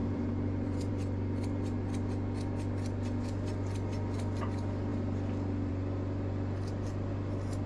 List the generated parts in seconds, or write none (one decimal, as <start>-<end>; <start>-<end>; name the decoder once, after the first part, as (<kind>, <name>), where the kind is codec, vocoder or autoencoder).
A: 0.0-0.9 (vocoder, BigVGAN v2)